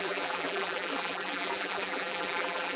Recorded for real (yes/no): no